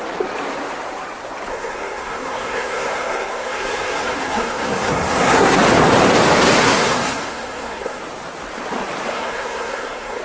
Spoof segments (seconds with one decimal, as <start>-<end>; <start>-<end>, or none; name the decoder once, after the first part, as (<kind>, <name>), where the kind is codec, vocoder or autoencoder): 1.5-5.6 (codec, SNAC); 6.6-8.0; 9.1-10.2

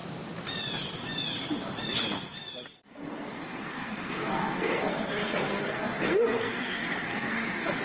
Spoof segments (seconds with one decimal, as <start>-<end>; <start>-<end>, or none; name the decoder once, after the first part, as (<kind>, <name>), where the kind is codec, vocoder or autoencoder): 2.7-7.8 (codec, SNAC)

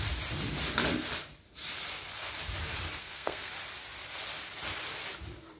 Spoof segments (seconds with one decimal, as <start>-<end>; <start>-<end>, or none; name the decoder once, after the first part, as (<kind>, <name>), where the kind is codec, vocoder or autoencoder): 3.0-3.5 (codec, SNAC)

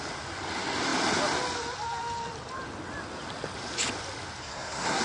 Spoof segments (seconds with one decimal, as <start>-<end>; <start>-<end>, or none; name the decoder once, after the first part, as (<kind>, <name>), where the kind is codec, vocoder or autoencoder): 4.4-5.0 (codec, SNAC)

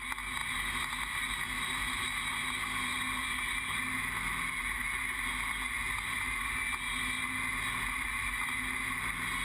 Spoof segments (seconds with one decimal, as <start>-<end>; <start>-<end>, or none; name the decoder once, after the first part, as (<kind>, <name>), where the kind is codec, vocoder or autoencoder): none

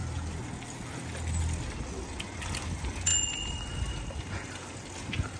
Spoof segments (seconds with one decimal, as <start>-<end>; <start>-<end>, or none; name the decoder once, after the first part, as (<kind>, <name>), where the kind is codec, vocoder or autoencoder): none